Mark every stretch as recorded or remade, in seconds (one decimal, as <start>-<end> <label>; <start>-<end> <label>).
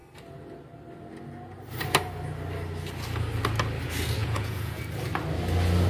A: 0.0-4.2 recorded; 4.2-4.8 remade; 4.8-5.9 recorded